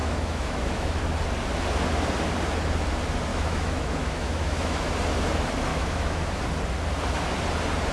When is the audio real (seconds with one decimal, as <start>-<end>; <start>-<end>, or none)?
1.0-3.3; 4.9-5.7; 6.4-7.9